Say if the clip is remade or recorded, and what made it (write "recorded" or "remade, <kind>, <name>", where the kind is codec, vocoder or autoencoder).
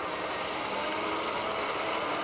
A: recorded